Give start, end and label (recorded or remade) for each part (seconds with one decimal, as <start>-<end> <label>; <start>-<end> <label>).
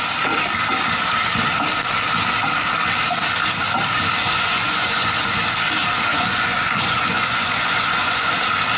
0.0-4.2 recorded; 4.2-5.1 remade; 5.1-6.1 recorded; 6.1-8.3 remade; 8.3-8.8 recorded